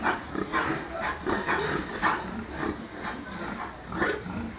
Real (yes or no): yes